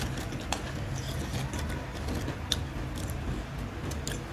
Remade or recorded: recorded